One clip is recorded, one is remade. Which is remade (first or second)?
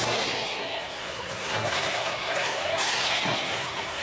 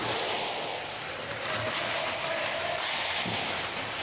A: first